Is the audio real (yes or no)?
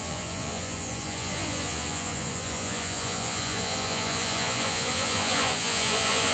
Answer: no